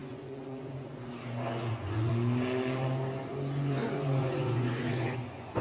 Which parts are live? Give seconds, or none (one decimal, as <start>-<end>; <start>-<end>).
2.1-3.3